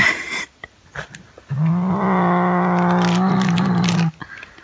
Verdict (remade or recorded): recorded